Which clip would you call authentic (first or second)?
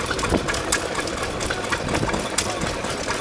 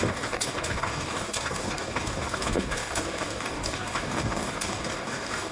first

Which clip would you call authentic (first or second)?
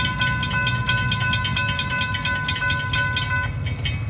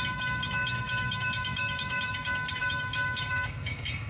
first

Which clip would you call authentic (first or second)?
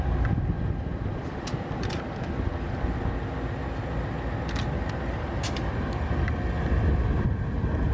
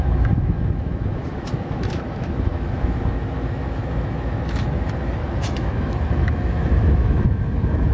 first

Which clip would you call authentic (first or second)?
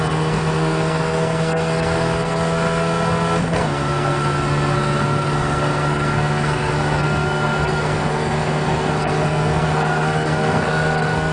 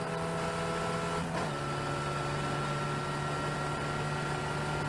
second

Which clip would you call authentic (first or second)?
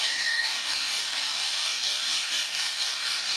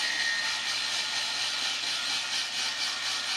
second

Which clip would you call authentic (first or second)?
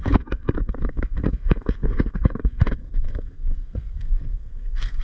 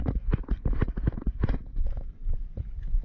second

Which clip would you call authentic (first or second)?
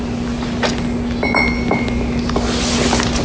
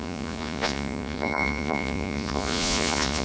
first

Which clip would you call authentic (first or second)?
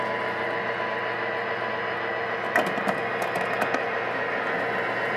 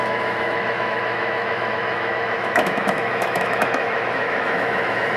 first